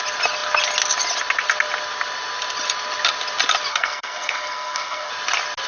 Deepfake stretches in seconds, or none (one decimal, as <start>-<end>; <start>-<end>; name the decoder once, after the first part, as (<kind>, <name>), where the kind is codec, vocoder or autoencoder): 3.7-5.1 (codec, SNAC)

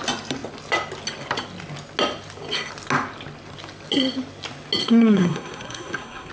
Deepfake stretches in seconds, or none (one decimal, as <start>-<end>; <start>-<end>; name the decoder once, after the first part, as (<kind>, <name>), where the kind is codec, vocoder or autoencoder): 4.8-6.3 (codec, SNAC)

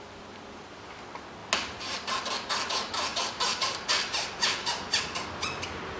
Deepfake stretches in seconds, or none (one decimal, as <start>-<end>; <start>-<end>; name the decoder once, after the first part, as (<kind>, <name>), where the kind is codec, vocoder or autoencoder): 3.1-5.0 (vocoder, BigVGAN v2)

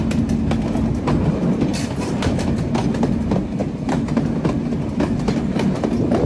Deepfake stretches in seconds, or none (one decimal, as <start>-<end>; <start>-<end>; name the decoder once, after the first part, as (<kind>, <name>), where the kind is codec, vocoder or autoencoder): 1.7-2.7 (vocoder, BigVGAN v2)

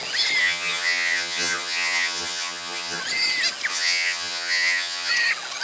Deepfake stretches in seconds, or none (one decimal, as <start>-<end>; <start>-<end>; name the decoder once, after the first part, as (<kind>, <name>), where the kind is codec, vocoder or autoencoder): 0.4-3.0 (vocoder, HiFi-GAN); 3.7-5.1

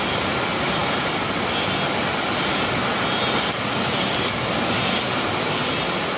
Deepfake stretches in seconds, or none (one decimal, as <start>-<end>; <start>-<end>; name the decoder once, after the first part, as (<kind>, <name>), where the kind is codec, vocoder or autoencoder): none

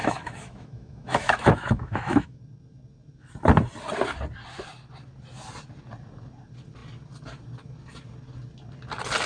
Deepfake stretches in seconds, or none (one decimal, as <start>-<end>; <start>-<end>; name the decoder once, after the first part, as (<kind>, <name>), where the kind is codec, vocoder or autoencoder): 0.0-2.4 (autoencoder, DAC-VAE)

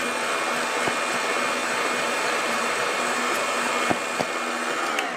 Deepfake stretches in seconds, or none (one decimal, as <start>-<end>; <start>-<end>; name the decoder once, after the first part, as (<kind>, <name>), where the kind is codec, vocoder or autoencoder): 1.6-3.7 (vocoder, BigVGAN v2)